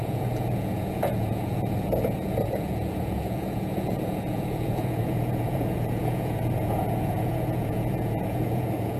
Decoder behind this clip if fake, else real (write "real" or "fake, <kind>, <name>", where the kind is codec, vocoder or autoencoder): fake, vocoder, Vocos